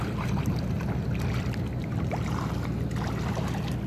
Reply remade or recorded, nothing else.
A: recorded